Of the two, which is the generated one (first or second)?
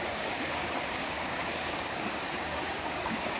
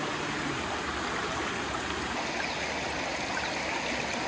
first